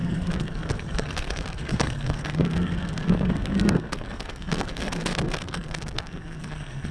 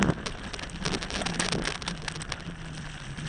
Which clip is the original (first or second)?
second